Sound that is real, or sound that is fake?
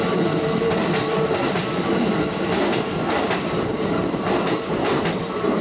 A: real